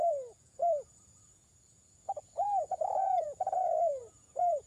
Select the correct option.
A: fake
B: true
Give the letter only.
A